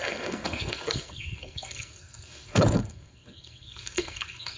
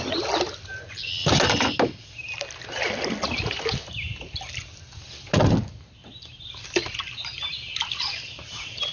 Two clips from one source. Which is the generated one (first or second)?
first